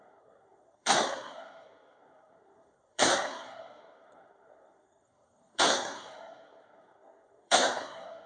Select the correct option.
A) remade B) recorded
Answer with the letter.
A